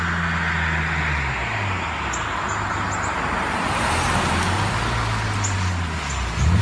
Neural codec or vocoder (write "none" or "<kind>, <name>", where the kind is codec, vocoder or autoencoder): none